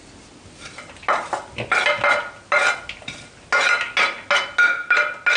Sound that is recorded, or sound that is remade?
recorded